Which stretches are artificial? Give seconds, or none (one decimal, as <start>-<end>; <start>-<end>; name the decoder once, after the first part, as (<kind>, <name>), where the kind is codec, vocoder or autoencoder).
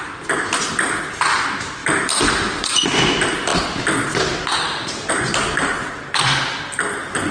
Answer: none